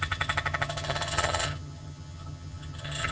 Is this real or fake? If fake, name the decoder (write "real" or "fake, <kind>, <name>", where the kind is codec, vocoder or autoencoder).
fake, vocoder, HiFi-GAN